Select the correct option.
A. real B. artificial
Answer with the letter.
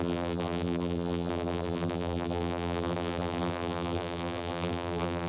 B